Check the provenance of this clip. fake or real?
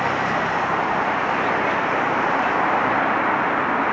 real